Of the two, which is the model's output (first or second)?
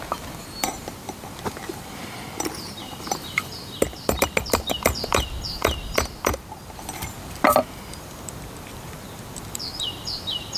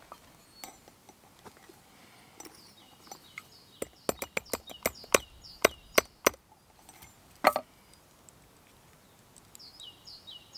first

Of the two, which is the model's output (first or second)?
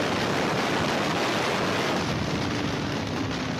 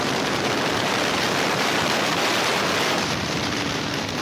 second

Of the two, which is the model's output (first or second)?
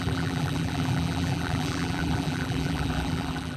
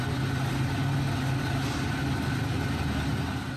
first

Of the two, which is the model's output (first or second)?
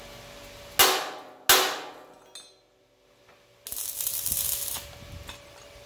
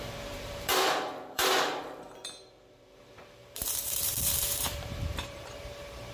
second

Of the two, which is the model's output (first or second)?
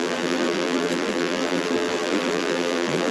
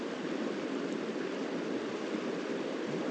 first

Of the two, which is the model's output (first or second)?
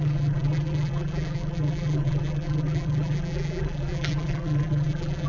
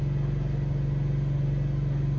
first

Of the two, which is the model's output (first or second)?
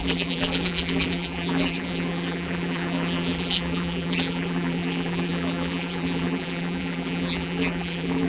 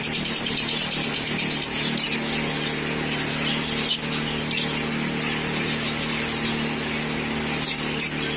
first